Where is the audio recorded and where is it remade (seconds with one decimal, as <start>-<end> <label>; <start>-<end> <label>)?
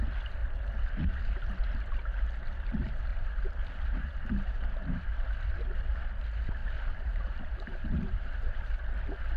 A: 0.0-3.1 recorded; 3.1-4.1 remade; 4.1-6.6 recorded; 6.6-8.6 remade; 8.6-9.4 recorded